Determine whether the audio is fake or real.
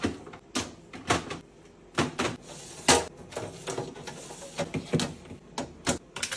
real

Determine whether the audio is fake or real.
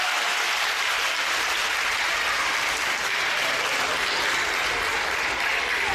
fake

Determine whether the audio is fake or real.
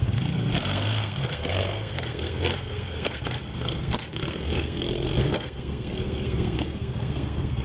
fake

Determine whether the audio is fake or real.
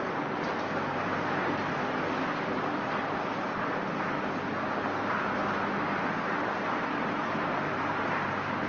real